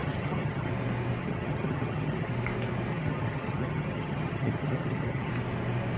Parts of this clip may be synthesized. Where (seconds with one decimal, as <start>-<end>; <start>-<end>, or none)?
0.0-0.7; 1.2-2.3; 2.9-5.3